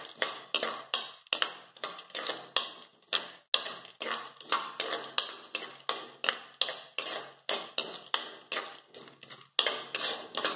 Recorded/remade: recorded